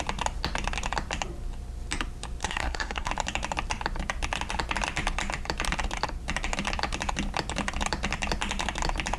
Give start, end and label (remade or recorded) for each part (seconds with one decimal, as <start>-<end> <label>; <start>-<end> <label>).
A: 0.0-2.4 recorded; 2.4-3.1 remade; 3.1-9.2 recorded